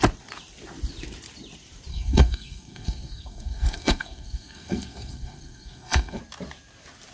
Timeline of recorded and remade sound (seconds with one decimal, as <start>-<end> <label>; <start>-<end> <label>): 0.0-1.9 recorded; 1.9-6.2 remade; 6.2-7.1 recorded